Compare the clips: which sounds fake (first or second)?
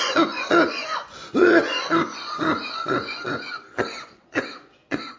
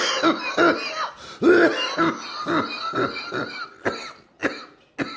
first